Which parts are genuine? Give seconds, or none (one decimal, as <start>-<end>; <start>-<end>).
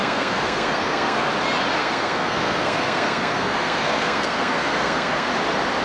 1.3-1.8; 5.3-5.8